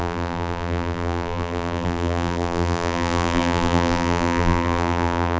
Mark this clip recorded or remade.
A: remade